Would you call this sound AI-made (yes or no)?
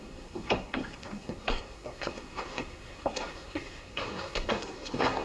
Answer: yes